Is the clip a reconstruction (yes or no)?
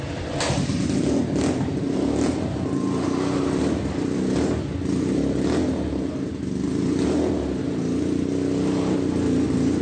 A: no